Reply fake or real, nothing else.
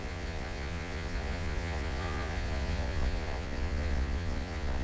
fake